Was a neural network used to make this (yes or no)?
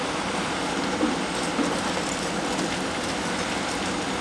no